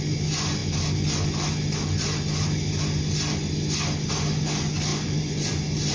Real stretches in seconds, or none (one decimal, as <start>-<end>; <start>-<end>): 0.0-4.9